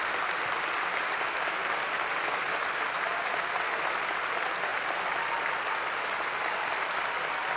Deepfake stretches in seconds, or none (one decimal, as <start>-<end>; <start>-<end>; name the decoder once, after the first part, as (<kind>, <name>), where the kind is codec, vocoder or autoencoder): none

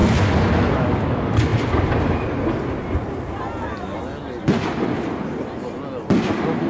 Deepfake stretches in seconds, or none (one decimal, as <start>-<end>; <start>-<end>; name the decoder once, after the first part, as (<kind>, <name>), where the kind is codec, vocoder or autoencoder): none

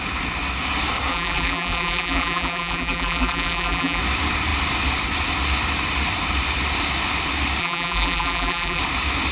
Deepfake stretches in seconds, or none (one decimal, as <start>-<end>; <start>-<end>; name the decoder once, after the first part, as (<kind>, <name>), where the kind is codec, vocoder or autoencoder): 1.1-4.0 (vocoder, BigVGAN v2); 7.6-8.8

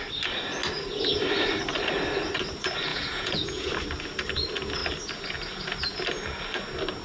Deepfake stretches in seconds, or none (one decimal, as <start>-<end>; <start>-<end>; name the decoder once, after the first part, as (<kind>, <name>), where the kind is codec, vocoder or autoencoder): 2.9-3.7 (vocoder, Vocos)

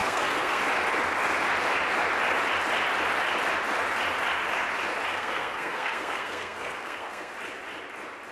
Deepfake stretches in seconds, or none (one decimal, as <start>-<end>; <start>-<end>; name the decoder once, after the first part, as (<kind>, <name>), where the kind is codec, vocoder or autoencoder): 0.0-0.6 (codec, SNAC); 5.1-7.3